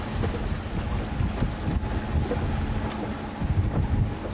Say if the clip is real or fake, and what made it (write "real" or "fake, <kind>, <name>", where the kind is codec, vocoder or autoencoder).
real